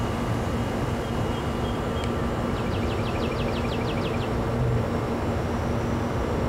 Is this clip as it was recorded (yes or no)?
yes